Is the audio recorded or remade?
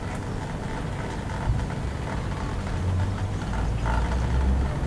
recorded